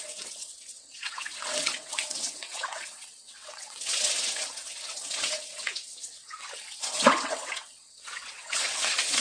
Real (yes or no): no